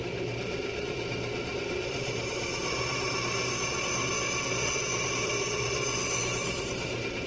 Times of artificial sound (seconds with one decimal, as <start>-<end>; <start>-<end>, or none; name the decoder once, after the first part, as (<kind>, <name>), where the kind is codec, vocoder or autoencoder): 0.0-4.0 (vocoder, BigVGAN v2); 6.6-7.3